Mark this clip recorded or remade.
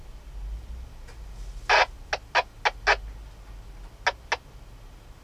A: recorded